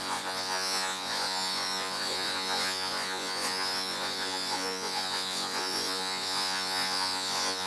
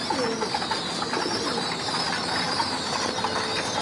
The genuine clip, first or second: second